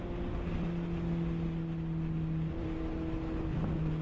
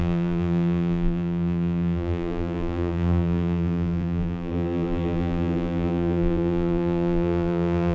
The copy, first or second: second